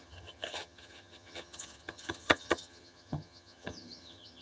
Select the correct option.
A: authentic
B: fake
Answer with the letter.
B